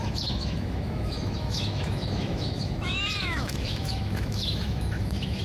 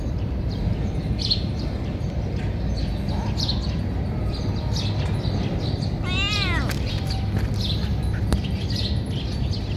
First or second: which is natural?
second